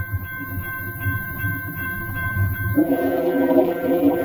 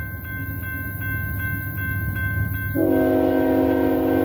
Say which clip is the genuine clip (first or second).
second